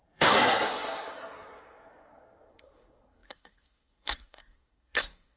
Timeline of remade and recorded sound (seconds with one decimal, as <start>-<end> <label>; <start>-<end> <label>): 0.0-5.4 remade